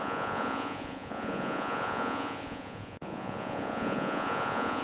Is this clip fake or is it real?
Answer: fake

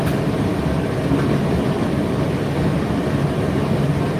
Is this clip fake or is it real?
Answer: real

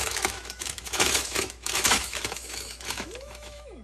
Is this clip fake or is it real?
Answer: fake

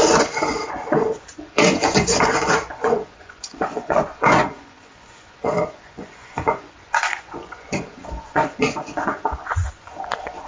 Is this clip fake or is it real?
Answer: fake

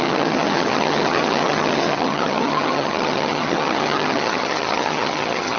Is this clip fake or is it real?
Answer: fake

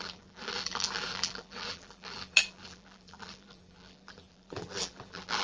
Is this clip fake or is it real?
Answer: fake